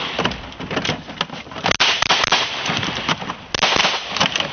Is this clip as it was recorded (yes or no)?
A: yes